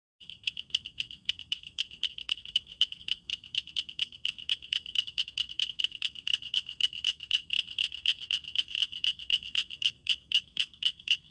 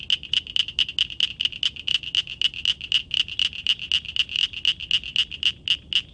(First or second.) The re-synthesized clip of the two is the first